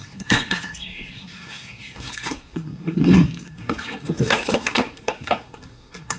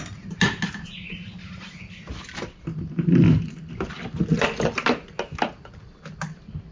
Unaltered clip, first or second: second